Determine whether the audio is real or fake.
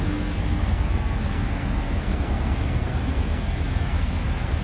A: fake